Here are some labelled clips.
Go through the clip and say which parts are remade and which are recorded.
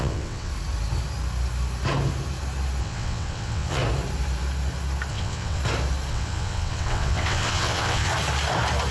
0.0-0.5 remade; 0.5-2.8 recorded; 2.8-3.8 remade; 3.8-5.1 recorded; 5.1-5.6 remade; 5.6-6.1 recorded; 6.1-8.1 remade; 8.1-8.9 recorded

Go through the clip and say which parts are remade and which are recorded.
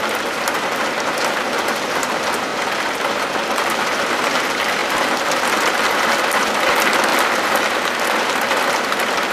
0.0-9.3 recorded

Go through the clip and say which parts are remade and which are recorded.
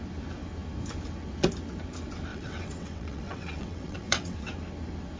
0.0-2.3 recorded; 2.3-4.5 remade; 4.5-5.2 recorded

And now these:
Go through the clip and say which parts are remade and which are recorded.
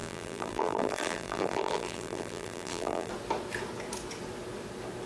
0.0-3.1 remade; 3.1-5.1 recorded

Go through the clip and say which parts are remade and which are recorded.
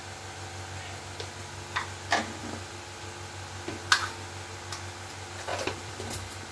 0.0-2.4 recorded; 2.4-3.0 remade; 3.0-5.5 recorded; 5.5-6.5 remade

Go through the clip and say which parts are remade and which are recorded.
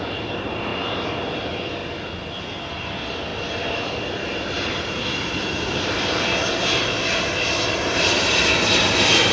0.0-0.7 remade; 0.7-1.2 recorded; 1.2-1.8 remade; 1.8-2.7 recorded; 2.7-3.3 remade; 3.3-6.8 recorded; 6.8-9.3 remade